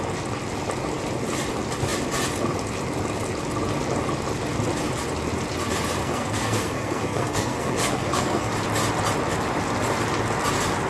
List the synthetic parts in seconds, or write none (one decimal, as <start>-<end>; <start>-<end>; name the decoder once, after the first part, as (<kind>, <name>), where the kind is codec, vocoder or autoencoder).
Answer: 6.0-8.5 (codec, SNAC)